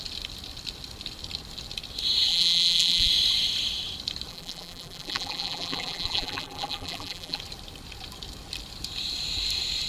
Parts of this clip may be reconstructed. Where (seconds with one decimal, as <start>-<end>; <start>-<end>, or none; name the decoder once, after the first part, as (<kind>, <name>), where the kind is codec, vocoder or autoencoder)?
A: 2.3-3.1 (vocoder, BigVGAN v2); 4.3-7.4